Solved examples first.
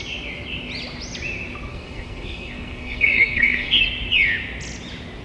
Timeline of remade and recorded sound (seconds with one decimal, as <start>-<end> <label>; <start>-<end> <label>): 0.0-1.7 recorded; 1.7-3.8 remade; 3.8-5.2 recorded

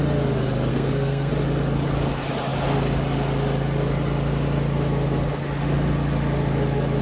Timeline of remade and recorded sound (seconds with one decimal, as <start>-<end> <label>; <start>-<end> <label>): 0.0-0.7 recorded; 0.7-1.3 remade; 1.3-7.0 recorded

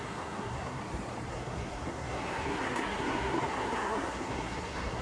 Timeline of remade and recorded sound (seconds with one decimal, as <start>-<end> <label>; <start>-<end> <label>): 0.0-0.8 remade; 0.8-1.3 recorded; 1.3-5.0 remade

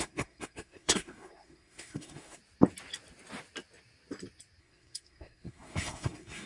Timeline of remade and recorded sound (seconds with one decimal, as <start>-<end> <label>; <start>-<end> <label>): 0.0-2.4 remade; 2.4-4.6 recorded; 4.6-6.5 remade